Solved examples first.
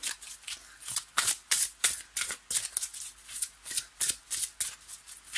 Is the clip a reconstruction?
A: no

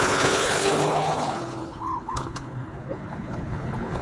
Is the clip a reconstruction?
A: yes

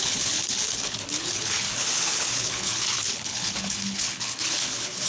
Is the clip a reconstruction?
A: yes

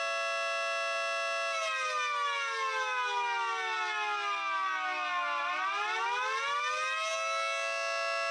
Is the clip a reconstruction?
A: no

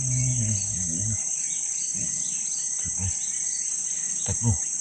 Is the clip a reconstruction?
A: no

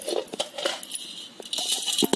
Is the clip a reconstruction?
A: no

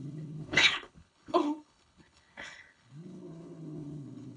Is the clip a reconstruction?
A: yes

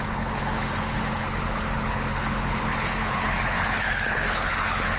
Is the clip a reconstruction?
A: yes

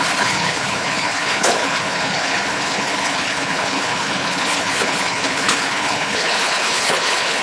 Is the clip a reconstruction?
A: yes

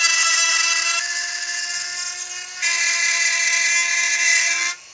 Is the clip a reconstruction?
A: no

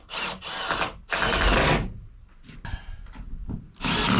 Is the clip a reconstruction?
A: no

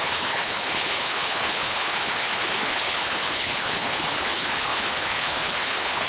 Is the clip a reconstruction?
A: yes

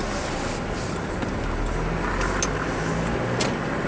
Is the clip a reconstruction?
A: no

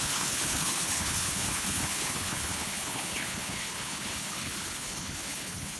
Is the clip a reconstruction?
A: yes